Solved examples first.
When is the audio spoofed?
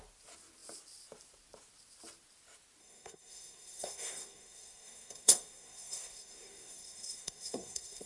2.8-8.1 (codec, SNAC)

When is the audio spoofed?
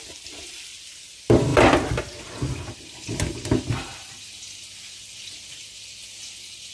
none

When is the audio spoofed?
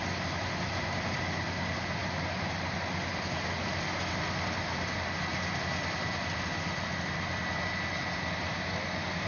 none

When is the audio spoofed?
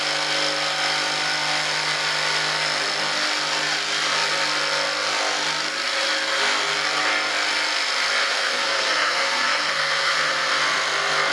8.2-10.5 (codec, SNAC)